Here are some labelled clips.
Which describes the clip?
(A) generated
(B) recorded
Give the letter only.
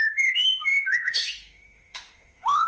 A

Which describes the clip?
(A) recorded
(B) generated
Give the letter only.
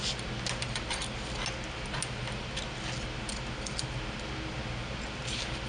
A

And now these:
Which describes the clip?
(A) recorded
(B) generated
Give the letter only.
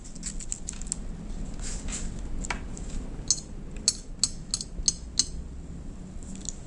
A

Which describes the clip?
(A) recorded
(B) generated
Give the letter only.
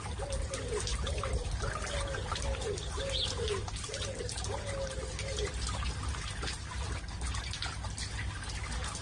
A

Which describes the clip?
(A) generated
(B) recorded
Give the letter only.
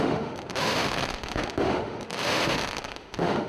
A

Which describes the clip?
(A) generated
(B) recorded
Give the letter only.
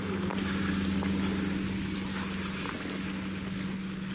B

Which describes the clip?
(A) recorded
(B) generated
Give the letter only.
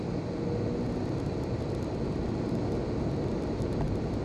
A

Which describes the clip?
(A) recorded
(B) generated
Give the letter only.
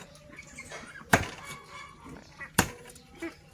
A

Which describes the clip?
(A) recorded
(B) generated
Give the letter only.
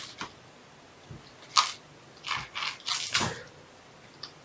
A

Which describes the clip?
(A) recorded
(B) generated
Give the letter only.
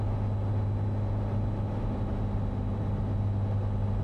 A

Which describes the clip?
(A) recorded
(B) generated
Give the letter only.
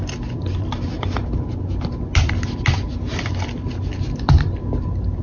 A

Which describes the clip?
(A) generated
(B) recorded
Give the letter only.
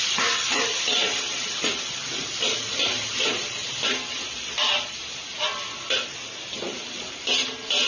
B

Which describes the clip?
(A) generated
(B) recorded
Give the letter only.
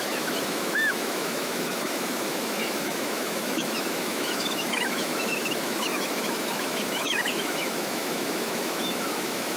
A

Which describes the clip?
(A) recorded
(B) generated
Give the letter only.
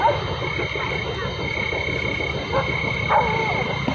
A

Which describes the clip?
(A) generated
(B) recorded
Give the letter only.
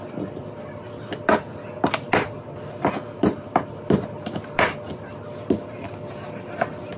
B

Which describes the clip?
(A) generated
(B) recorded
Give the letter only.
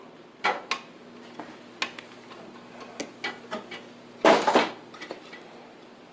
B